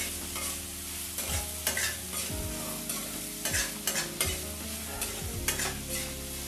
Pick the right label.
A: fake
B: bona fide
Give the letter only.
B